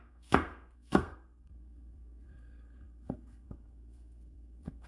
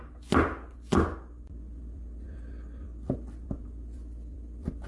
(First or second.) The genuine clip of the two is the second